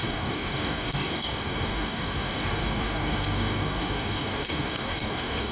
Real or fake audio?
fake